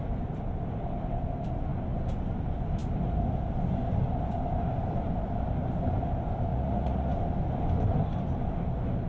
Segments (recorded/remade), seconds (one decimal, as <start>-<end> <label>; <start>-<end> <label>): 0.0-6.5 recorded; 6.5-7.1 remade; 7.1-9.1 recorded